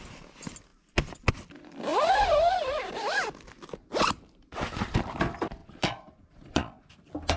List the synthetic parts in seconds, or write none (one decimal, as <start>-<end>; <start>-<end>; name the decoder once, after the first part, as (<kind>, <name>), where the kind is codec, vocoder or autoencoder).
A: 5.6-6.8 (vocoder, Vocos)